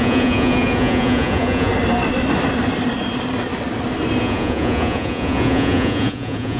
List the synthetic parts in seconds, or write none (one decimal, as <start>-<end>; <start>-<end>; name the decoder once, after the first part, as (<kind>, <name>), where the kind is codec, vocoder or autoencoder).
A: 0.0-1.7 (vocoder, Vocos); 4.2-6.6